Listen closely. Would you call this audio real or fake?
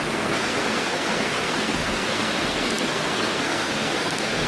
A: fake